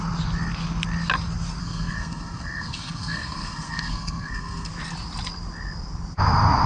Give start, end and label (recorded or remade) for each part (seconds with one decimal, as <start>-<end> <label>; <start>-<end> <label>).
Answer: 0.0-1.6 recorded; 1.6-4.7 remade; 4.7-6.7 recorded